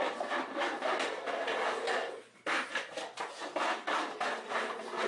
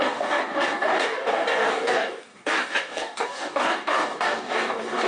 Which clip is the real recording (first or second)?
first